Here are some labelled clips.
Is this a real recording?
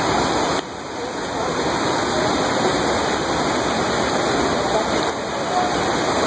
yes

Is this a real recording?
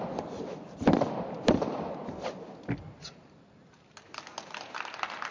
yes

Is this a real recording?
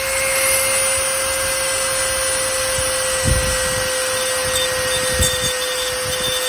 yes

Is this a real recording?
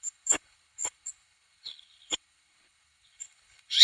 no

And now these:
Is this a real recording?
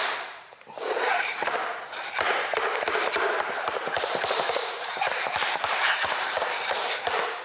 no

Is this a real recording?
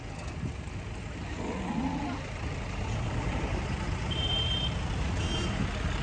yes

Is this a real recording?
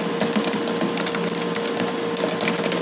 yes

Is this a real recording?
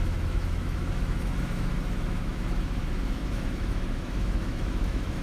no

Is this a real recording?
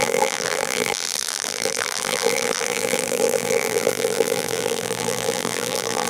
no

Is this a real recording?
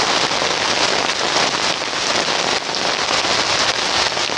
yes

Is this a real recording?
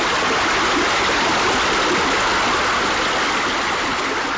yes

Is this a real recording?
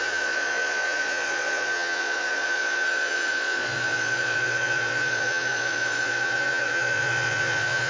no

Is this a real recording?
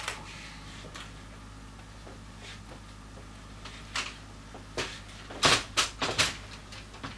yes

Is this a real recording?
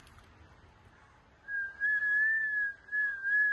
yes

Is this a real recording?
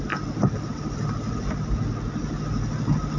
yes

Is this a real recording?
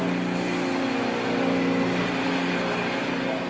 yes